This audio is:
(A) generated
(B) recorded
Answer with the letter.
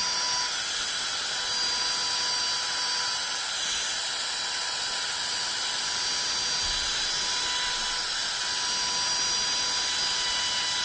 B